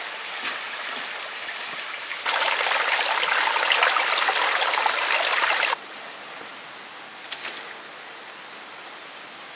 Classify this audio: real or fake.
real